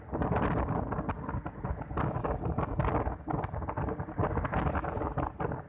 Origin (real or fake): real